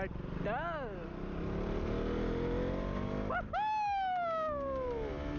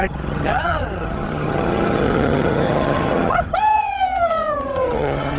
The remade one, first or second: second